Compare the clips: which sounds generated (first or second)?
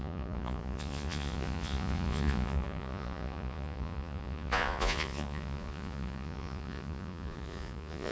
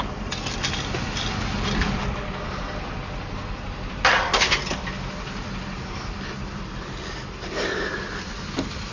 first